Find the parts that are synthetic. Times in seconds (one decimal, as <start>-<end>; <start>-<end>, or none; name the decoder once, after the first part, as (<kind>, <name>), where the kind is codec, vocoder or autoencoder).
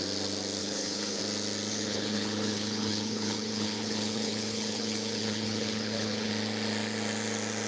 0.6-1.2 (codec, HILCodec); 1.7-6.3